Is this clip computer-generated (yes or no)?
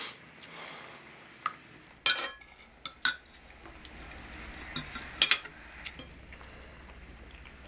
no